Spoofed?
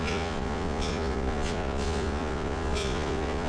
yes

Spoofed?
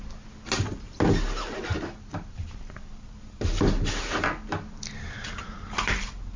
no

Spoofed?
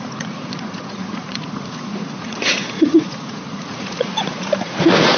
yes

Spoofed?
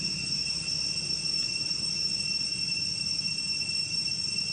no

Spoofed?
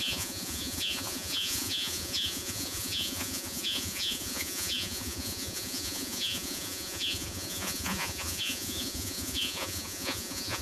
yes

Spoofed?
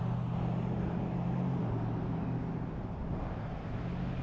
no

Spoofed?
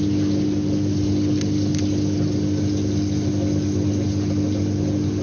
no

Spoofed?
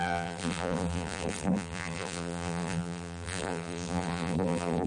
yes